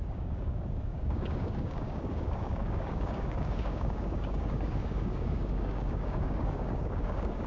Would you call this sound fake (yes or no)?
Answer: yes